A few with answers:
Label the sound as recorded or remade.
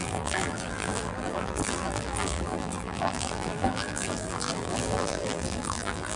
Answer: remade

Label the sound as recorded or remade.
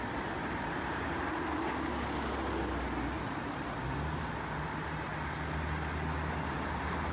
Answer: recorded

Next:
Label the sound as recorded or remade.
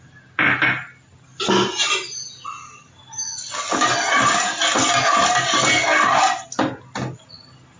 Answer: recorded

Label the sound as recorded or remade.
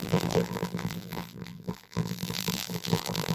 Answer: remade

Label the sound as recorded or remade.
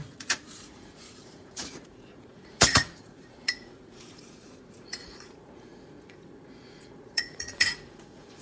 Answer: remade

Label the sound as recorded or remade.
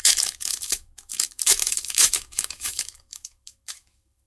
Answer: remade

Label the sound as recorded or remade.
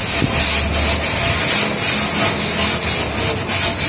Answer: recorded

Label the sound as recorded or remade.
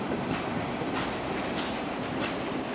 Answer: recorded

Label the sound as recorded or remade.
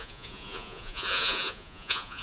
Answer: remade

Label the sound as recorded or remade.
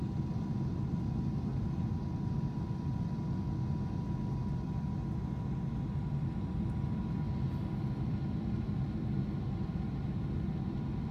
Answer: recorded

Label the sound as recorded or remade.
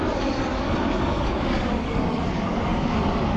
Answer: remade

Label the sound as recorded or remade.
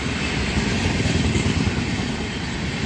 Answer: recorded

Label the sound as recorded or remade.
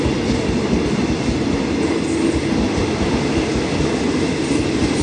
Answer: recorded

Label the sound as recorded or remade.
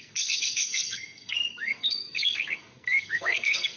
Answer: remade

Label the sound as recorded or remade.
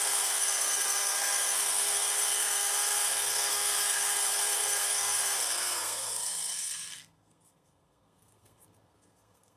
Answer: remade